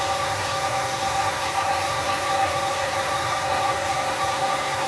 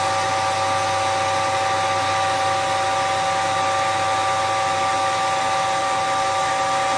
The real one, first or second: second